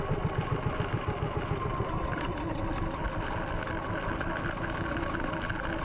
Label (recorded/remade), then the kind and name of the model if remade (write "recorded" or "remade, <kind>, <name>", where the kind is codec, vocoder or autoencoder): recorded